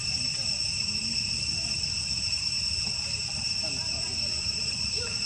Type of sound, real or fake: fake